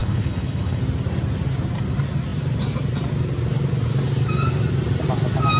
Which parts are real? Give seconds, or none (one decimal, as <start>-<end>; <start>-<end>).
0.8-5.6